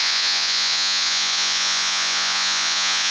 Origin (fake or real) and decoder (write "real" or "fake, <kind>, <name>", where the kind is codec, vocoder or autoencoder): fake, vocoder, Vocos